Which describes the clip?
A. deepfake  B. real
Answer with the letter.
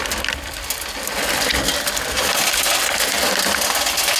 B